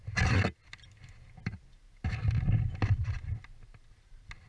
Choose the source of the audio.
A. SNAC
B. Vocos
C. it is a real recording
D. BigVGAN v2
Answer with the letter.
C